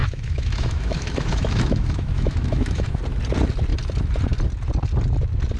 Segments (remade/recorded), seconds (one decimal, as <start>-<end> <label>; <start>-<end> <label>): 0.0-3.0 remade; 3.0-5.6 recorded